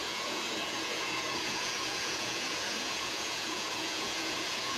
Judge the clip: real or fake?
fake